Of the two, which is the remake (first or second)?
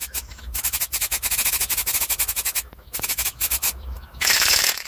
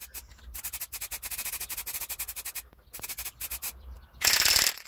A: first